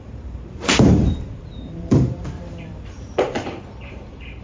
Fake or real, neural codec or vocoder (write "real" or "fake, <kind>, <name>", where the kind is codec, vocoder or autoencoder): fake, vocoder, BigVGAN v2